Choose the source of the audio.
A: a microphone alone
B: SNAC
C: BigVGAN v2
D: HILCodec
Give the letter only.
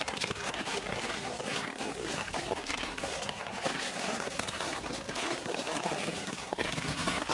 B